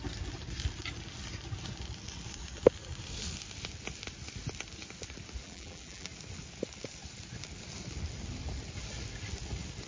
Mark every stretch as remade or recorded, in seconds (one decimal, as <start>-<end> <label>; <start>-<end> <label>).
0.0-5.4 recorded; 5.4-6.1 remade; 6.1-9.9 recorded